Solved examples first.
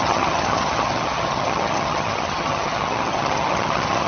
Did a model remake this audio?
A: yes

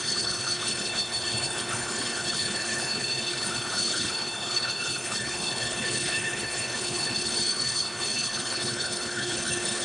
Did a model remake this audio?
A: yes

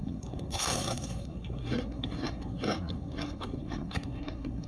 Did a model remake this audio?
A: yes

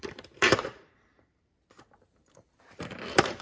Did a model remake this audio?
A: yes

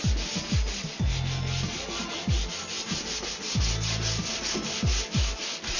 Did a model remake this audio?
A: no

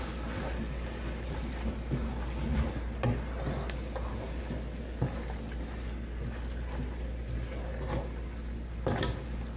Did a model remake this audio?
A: no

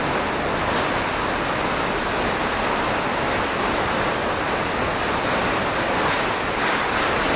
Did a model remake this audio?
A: no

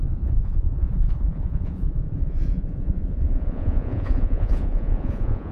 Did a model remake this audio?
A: yes